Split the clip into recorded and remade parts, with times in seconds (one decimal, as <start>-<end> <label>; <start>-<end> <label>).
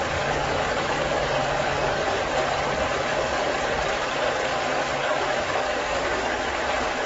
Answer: 0.0-2.3 remade; 2.3-2.9 recorded; 2.9-3.5 remade; 3.5-4.8 recorded; 4.8-6.5 remade; 6.5-7.1 recorded